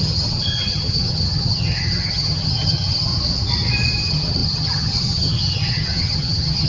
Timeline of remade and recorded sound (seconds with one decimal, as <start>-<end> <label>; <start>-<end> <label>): 0.0-3.1 remade; 3.1-4.0 recorded; 4.0-6.7 remade